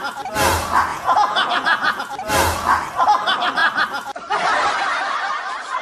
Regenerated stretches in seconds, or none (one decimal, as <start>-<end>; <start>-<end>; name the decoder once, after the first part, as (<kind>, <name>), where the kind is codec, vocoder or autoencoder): 0.9-2.0 (vocoder, Vocos)

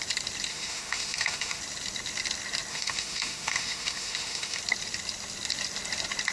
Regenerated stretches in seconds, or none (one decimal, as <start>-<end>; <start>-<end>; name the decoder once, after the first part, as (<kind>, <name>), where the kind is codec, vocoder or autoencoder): 0.5-1.6 (autoencoder, DAC-VAE); 2.7-4.6

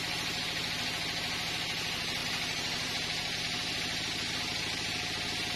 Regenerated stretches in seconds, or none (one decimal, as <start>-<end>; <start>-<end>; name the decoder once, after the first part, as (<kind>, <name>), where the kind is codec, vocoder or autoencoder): 2.2-3.4 (vocoder, BigVGAN v2)

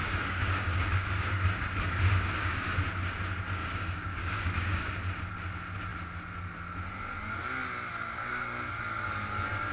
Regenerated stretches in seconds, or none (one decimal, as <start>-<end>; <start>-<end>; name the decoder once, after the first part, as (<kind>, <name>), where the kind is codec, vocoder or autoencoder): 0.0-2.9 (codec, DAC); 3.6-4.9; 8.2-8.8

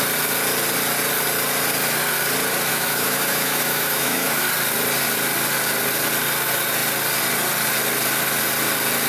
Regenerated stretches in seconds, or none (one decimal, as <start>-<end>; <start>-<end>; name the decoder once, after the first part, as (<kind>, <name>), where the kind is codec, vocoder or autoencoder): 2.7-4.4 (autoencoder, DAC-VAE)

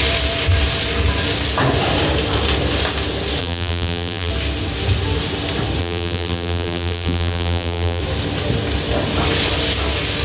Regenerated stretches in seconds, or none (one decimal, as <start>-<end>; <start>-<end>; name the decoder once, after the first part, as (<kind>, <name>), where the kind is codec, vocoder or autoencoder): 3.4-4.3 (vocoder, BigVGAN v2); 5.8-8.0

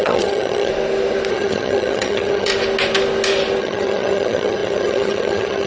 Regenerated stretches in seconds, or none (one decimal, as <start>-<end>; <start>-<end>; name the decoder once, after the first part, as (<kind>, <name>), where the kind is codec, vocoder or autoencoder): 0.0-0.7 (vocoder, HiFi-GAN); 1.3-2.5; 3.6-5.7

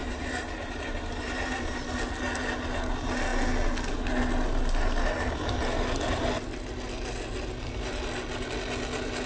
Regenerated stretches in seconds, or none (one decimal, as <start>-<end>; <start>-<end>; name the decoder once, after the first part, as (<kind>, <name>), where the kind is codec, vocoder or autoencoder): 0.0-1.8 (vocoder, BigVGAN v2)